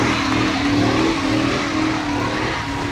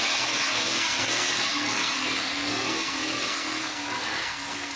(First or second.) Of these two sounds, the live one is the first